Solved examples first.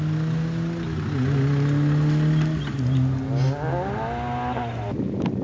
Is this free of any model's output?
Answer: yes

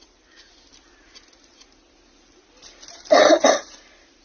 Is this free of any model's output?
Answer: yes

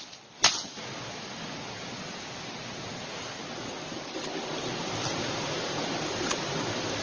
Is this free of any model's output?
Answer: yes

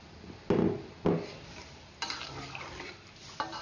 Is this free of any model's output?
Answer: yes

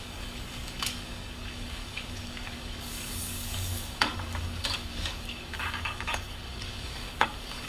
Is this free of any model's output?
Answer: no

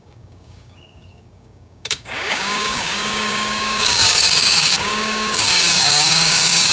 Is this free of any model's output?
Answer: no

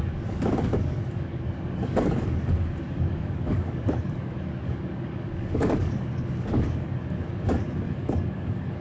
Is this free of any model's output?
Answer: no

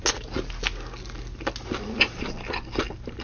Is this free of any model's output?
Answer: yes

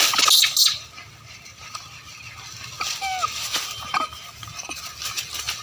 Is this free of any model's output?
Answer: yes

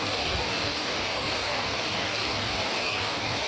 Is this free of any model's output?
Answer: no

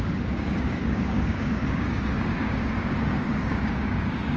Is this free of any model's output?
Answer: no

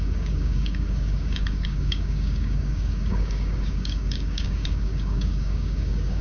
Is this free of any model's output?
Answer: no